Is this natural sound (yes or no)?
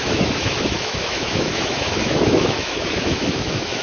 no